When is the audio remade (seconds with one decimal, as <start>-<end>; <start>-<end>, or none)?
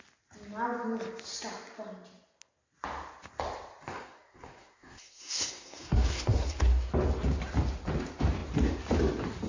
3.9-6.9